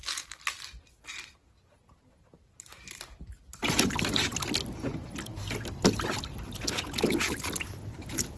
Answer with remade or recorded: recorded